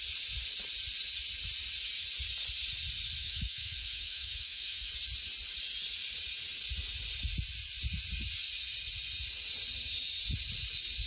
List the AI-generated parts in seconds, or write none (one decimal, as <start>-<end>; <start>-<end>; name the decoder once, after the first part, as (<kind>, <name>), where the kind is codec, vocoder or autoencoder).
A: 3.2-4.9 (autoencoder, DAC-VAE)